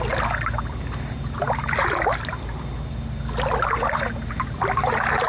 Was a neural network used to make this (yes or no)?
no